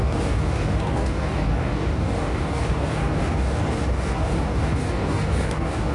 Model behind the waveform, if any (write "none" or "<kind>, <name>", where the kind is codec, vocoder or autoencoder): codec, DAC